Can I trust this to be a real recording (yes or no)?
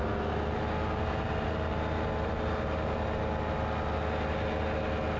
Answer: yes